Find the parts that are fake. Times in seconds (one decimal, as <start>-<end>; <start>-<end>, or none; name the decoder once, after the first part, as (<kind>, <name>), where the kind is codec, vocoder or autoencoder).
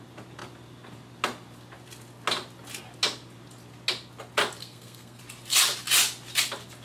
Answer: 4.6-5.2 (codec, SNAC)